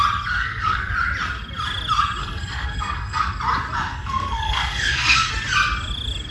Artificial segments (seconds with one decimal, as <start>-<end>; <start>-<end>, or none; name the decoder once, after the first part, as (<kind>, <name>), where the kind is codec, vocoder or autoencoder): 0.4-0.9 (codec, SNAC); 2.2-3.3; 3.9-5.3